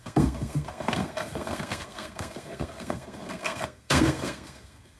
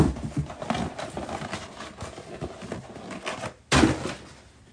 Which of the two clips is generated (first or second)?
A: first